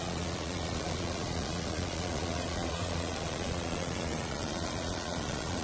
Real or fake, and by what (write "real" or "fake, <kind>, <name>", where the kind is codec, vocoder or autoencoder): fake, vocoder, Vocos